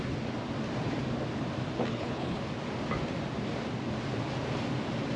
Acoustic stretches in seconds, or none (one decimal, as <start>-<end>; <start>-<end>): 0.0-1.9; 2.4-5.2